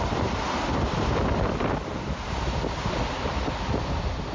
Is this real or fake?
real